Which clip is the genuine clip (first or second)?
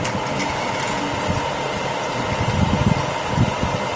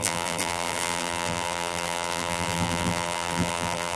first